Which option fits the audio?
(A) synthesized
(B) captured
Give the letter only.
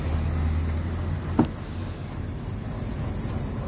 B